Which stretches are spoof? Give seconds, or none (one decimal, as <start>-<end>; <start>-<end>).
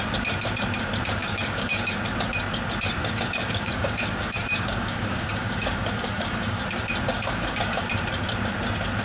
1.2-1.9; 3.0-6.6; 7.1-7.8